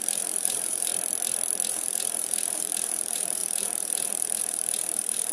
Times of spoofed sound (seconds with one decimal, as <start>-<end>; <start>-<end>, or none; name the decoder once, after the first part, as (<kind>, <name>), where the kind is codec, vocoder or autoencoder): 0.0-0.9 (vocoder, BigVGAN v2); 1.7-5.3